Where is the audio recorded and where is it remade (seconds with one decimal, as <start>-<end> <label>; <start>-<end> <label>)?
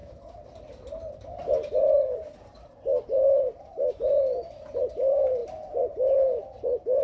0.0-5.4 remade; 5.4-7.0 recorded